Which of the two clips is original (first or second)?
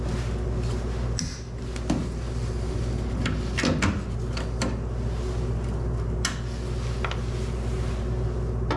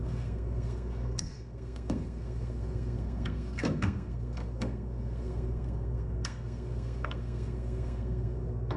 first